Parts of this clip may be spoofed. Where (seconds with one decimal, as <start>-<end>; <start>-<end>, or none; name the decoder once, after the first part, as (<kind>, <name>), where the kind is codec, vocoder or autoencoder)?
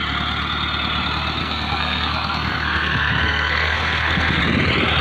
1.4-4.4 (codec, SNAC)